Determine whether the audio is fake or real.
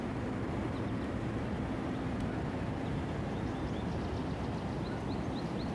real